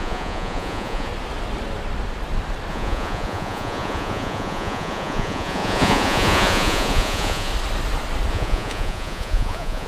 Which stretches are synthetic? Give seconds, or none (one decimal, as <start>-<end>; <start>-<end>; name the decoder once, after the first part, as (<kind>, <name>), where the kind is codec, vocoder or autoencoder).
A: 0.0-1.1 (vocoder, Vocos); 2.7-7.5; 8.3-9.9